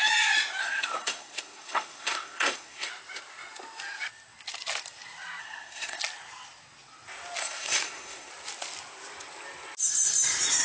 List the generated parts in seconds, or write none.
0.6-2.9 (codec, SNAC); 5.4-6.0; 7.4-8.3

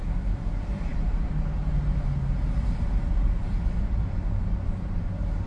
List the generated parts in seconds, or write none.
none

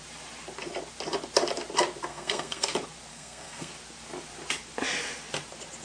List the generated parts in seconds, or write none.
2.1-2.7 (codec, SNAC); 3.1-3.7

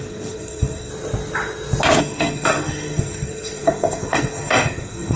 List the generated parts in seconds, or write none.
0.0-0.9 (codec, SNAC); 2.0-5.2

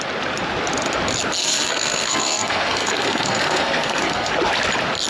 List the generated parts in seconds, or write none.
1.4-4.3 (codec, SNAC)